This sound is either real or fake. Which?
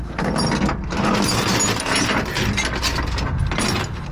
real